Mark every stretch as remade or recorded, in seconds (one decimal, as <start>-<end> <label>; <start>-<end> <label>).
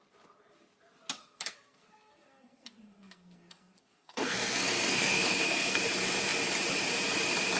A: 0.0-1.2 recorded; 1.2-5.8 remade; 5.8-7.6 recorded